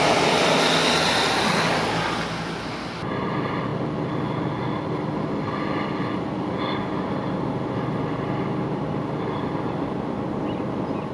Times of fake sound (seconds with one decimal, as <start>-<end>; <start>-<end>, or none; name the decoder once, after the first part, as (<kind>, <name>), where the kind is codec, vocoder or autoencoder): none